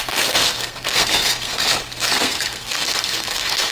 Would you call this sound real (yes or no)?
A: no